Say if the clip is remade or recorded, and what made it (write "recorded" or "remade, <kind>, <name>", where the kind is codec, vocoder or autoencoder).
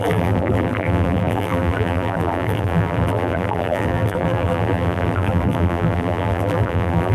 remade, vocoder, BigVGAN v2